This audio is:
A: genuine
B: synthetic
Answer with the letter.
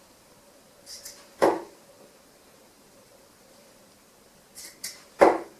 A